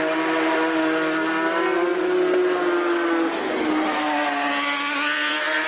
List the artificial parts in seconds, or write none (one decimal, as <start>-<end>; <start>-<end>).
none